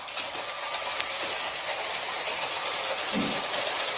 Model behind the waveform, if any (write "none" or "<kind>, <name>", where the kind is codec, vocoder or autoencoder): none